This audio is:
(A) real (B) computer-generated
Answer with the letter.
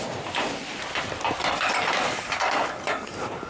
B